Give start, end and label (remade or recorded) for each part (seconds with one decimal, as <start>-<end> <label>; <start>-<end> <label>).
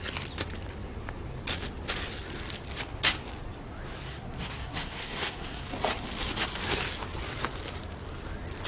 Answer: 0.0-4.1 recorded; 4.1-5.6 remade; 5.6-8.7 recorded